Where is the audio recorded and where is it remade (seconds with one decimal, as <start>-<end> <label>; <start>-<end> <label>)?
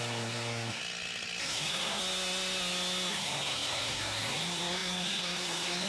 0.0-0.8 remade; 0.8-1.4 recorded; 1.4-2.0 remade; 2.0-3.1 recorded; 3.1-5.9 remade